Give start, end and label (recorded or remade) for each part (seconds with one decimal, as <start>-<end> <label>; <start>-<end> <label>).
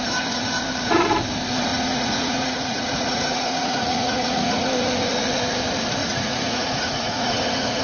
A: 0.0-1.7 recorded; 1.7-4.7 remade; 4.7-6.0 recorded; 6.0-7.8 remade